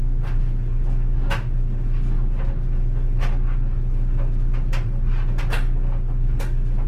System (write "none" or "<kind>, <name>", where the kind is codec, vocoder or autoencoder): none